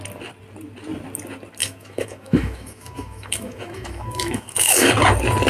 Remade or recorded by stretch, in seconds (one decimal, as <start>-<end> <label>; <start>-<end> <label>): 0.0-1.6 recorded; 1.6-4.9 remade; 4.9-5.5 recorded